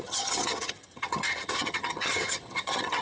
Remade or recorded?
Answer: remade